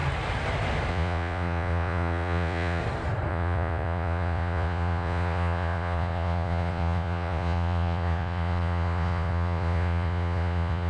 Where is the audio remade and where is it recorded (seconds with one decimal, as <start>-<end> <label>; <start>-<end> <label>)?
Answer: 0.0-0.9 recorded; 0.9-2.8 remade; 2.8-3.3 recorded; 3.3-10.9 remade